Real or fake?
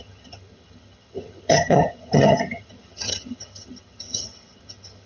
fake